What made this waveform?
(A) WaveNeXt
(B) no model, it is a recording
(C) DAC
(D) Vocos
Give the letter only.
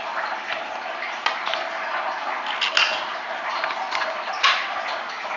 B